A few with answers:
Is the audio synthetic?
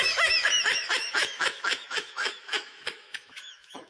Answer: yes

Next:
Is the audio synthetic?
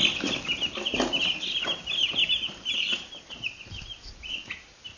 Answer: no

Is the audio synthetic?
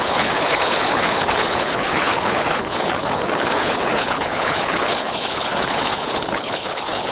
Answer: yes